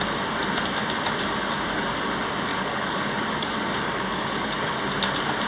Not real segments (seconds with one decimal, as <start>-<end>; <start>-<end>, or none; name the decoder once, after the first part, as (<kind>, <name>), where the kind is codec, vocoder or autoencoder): 2.5-4.8 (codec, DAC)